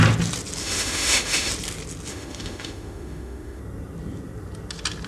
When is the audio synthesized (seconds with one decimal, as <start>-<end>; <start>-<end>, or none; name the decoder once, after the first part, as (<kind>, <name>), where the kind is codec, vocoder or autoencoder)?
0.6-1.5 (autoencoder, DAC-VAE); 2.1-3.6